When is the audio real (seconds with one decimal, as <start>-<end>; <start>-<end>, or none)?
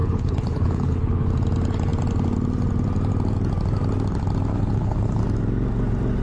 1.3-4.5; 5.2-6.2